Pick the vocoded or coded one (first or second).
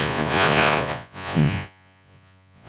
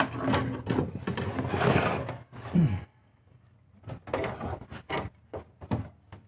first